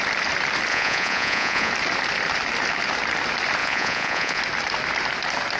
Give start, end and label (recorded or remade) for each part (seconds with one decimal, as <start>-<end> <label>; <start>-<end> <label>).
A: 0.0-0.7 recorded; 0.7-1.7 remade; 1.7-3.6 recorded; 3.6-4.4 remade; 4.4-5.6 recorded